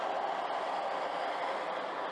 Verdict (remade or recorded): recorded